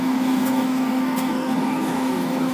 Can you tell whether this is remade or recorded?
remade